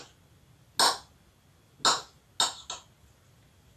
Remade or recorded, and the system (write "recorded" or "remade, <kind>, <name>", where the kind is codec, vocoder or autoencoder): recorded